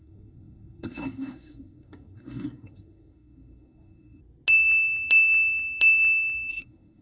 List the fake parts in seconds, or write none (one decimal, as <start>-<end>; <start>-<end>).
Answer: 0.0-4.2; 6.5-7.0